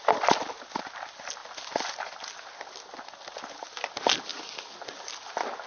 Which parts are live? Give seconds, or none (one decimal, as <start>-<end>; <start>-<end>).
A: 0.0-5.7